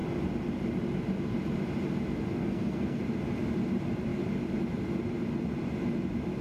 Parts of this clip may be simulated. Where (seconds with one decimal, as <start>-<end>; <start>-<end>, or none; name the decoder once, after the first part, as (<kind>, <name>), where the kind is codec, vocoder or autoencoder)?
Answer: 2.4-3.0 (codec, SNAC)